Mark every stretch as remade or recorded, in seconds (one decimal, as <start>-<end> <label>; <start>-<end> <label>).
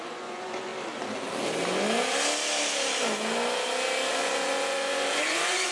0.0-0.7 remade; 0.7-4.1 recorded; 4.1-5.7 remade